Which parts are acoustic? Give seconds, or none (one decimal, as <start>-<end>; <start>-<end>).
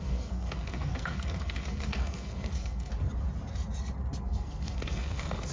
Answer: 2.9-4.2